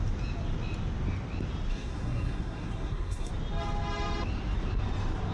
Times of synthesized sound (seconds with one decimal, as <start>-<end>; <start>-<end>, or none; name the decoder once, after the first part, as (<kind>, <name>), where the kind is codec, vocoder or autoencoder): 1.7-3.3 (codec, SNAC)